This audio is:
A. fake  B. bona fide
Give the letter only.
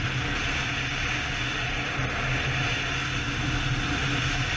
B